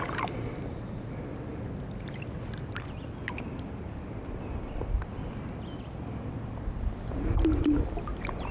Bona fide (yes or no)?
yes